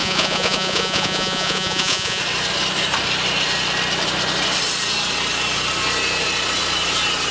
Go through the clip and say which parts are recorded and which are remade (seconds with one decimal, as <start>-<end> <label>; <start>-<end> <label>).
0.0-2.2 remade; 2.2-7.3 recorded